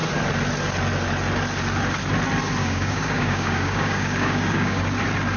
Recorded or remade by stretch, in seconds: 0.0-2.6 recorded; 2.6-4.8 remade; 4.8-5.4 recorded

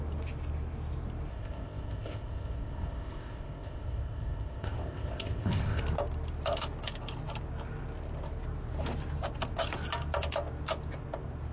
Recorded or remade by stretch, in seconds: 0.0-1.3 recorded; 1.3-5.8 remade; 5.8-11.5 recorded

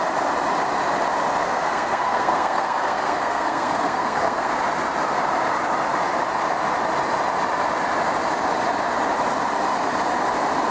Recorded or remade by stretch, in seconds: 0.0-1.4 recorded; 1.4-4.5 remade; 4.5-10.7 recorded